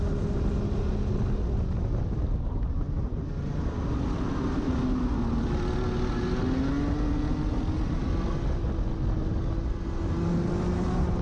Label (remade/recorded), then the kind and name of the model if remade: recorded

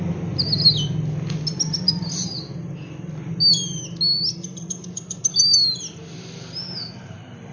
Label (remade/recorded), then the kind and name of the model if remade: recorded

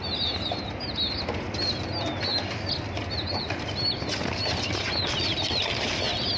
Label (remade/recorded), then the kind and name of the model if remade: recorded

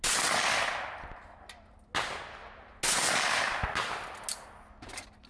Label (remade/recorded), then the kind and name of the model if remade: recorded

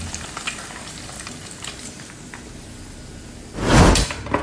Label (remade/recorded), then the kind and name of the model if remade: recorded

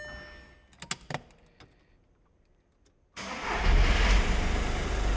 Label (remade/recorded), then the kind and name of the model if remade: recorded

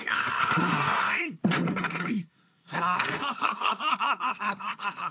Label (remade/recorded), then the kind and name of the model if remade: remade, codec, SNAC